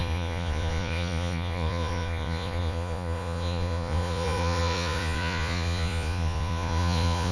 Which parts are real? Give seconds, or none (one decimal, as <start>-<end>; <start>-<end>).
none